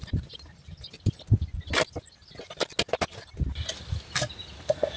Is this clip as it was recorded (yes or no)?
yes